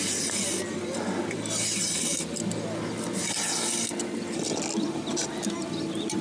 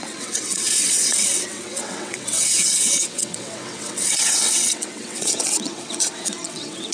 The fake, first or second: second